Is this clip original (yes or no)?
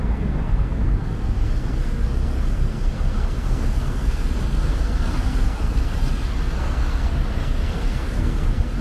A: no